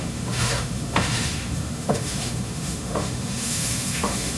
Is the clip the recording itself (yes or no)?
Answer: no